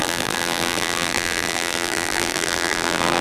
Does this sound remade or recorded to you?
remade